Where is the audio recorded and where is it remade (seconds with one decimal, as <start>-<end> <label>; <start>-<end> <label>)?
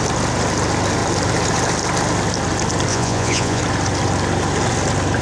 0.0-2.9 recorded; 2.9-3.6 remade; 3.6-5.2 recorded